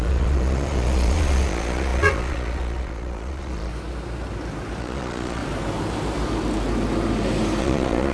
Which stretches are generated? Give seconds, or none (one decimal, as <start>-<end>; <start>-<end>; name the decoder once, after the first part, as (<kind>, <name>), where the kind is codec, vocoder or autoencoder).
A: 0.0-3.7 (vocoder, Vocos); 4.8-5.4; 7.6-8.1